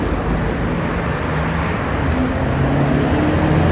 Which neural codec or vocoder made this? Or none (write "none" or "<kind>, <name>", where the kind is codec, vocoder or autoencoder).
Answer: none